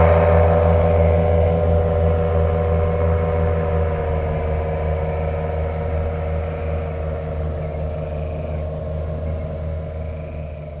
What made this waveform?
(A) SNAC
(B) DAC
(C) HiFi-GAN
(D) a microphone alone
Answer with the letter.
D